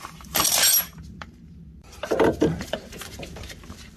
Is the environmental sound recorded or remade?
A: remade